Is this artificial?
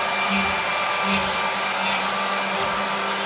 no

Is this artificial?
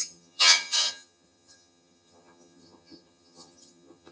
yes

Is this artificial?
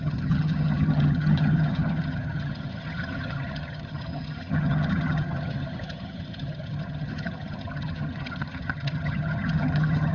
yes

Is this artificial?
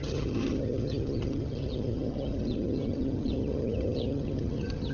yes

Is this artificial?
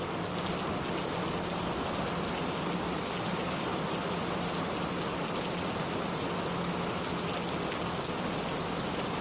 no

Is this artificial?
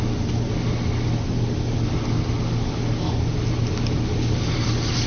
no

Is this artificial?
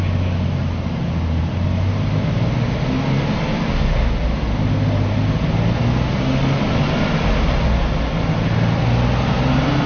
no